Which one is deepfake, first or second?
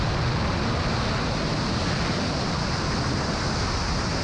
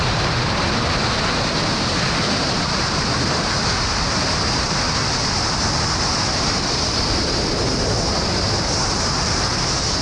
second